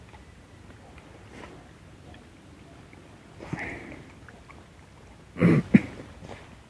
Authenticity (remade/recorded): recorded